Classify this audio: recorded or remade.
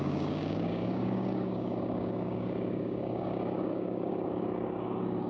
remade